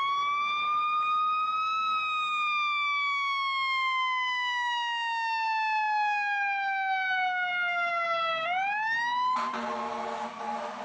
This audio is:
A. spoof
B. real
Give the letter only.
B